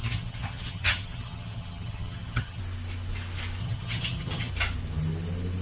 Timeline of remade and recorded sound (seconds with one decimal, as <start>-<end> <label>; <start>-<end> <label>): 0.0-2.6 remade; 2.6-3.6 recorded; 3.6-4.5 remade; 4.5-5.6 recorded